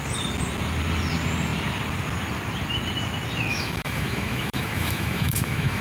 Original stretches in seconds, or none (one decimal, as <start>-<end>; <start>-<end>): 0.0-3.5